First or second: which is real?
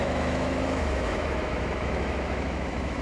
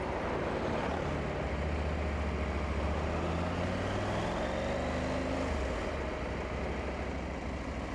second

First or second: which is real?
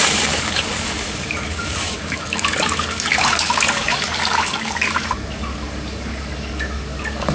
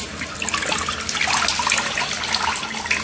second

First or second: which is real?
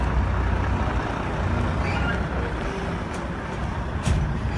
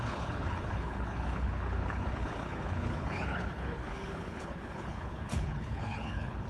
first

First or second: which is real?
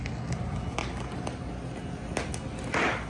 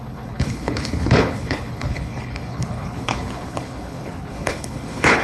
first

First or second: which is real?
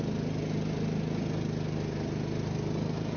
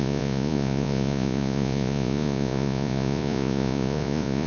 first